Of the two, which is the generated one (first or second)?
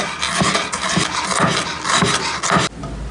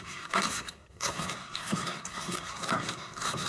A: second